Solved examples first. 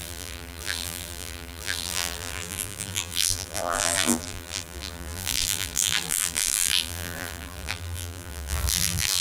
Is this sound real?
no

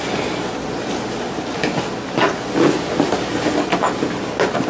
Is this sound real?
yes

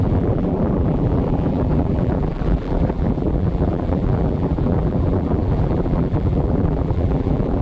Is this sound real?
no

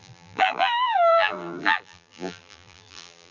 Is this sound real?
no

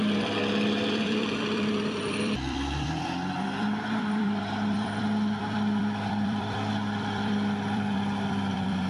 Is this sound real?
no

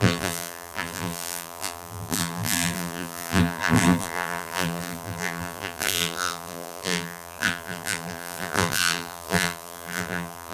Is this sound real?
no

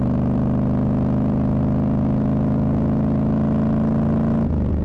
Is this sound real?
yes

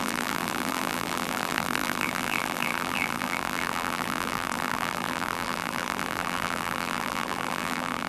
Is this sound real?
no